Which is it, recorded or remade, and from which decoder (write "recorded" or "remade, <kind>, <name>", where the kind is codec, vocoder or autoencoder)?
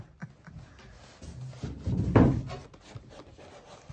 recorded